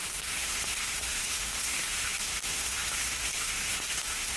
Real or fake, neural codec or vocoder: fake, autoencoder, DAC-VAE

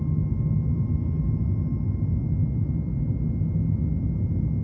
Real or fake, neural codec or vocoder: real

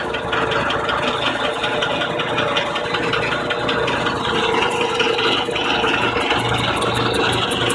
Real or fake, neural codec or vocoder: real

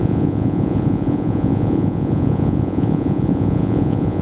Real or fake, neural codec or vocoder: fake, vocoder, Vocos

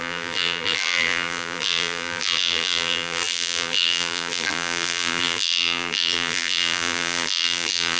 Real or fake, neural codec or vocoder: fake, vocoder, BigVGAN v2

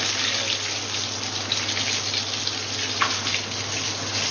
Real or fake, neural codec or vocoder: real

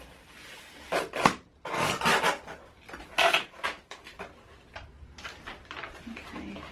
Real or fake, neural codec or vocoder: real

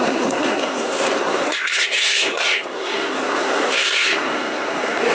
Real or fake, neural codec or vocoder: fake, codec, SNAC